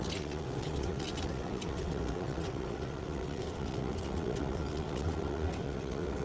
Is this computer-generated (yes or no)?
yes